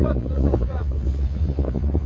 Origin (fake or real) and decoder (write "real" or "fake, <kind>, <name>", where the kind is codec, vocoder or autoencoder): fake, vocoder, Vocos